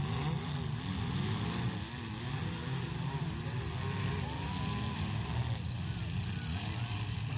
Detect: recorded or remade recorded